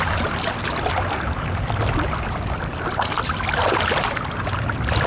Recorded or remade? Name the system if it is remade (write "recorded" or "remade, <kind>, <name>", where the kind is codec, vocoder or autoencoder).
recorded